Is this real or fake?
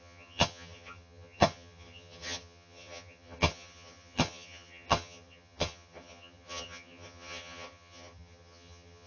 fake